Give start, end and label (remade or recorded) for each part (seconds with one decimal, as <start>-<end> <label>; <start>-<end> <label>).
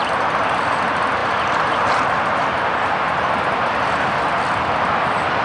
0.0-5.4 recorded